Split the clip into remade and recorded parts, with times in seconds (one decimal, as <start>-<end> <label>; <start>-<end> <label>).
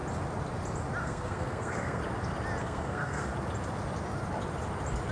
0.0-1.0 recorded; 1.0-2.0 remade; 2.0-2.6 recorded; 2.6-3.3 remade; 3.3-5.1 recorded